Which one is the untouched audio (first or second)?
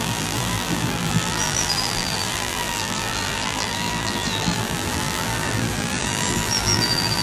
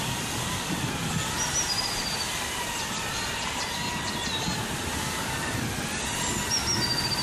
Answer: second